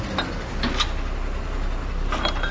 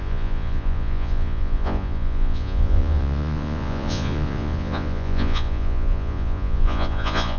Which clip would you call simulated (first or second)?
second